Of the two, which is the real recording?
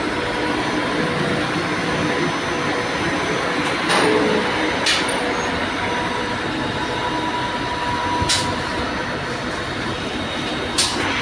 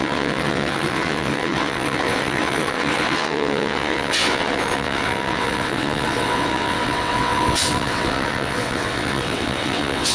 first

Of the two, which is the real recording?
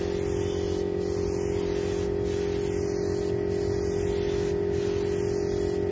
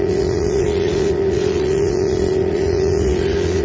first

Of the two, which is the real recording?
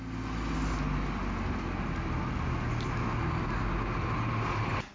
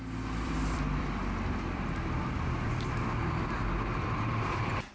first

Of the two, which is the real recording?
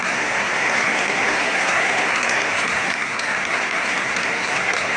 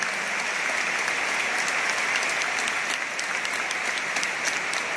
second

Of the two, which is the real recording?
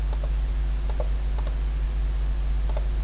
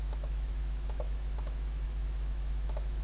first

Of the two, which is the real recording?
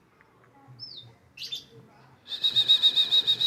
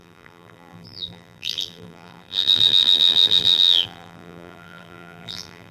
first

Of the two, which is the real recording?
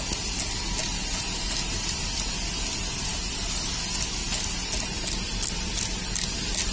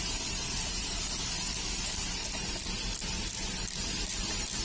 first